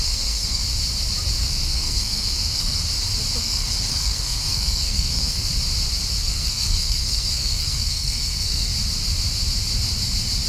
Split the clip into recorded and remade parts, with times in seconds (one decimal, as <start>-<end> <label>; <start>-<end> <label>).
0.0-0.6 remade; 0.6-1.4 recorded; 1.4-2.8 remade; 2.8-3.4 recorded; 3.4-5.5 remade; 5.5-6.2 recorded; 6.2-8.7 remade; 8.7-10.5 recorded